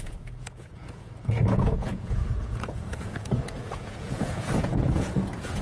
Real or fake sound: fake